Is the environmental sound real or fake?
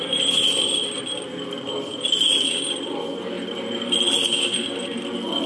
real